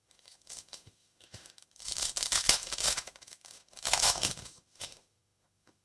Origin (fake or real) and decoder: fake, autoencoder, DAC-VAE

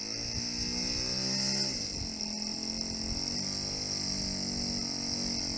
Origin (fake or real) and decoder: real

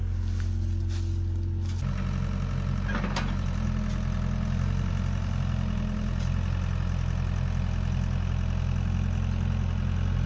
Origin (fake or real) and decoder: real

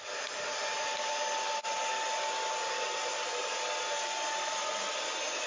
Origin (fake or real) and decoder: real